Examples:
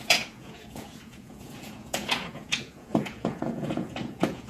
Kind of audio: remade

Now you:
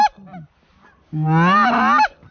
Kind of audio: recorded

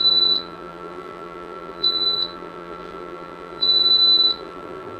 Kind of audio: remade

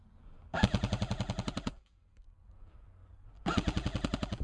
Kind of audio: remade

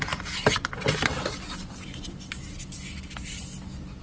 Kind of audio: recorded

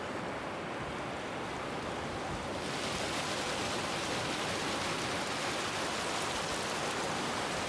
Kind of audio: recorded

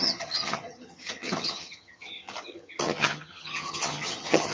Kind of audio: remade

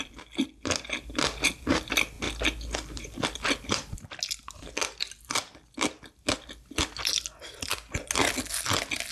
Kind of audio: recorded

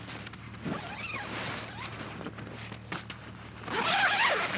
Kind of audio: recorded